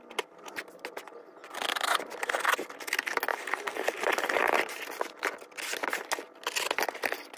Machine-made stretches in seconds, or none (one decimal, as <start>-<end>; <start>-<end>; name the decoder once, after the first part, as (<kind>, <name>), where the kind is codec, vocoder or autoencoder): 3.3-4.4 (vocoder, BigVGAN v2)